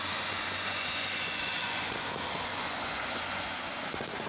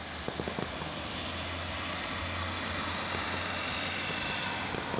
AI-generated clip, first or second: first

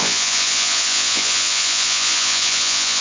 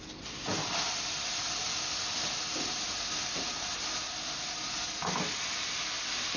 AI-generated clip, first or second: first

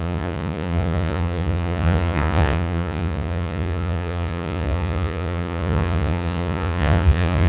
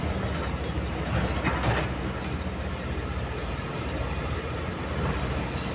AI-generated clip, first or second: first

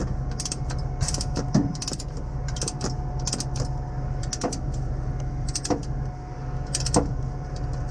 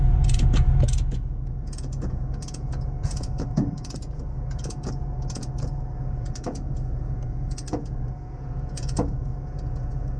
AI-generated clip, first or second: second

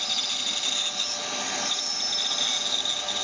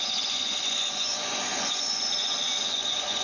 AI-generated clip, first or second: second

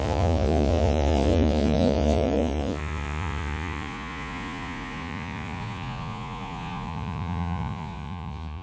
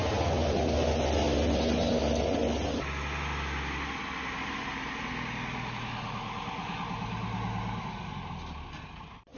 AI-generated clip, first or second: first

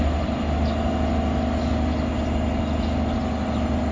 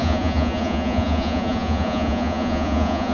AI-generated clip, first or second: second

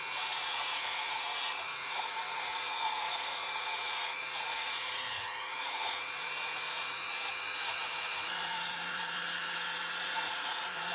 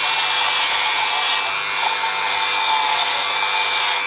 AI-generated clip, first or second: first